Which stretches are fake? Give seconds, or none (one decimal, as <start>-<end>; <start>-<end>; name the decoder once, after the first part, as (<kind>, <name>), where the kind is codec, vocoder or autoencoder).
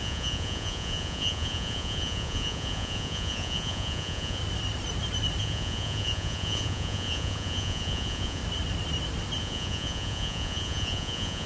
0.0-4.4 (vocoder, Vocos); 5.4-8.4; 9.4-11.5